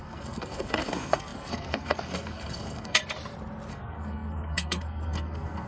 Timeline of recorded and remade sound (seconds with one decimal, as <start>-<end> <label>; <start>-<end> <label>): 0.0-3.0 remade; 3.0-3.7 recorded; 3.7-5.7 remade